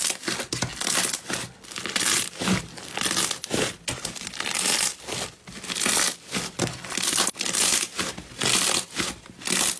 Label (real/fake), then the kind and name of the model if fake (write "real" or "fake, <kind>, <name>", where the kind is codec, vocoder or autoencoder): real